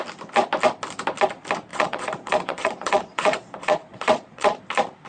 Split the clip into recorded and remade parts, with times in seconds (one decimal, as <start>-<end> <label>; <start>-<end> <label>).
0.0-1.7 recorded; 1.7-4.6 remade; 4.6-5.1 recorded